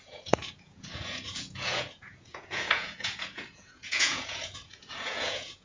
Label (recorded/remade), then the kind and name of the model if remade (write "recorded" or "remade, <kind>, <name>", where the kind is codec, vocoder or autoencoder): remade, vocoder, Vocos